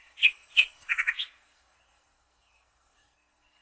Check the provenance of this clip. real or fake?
fake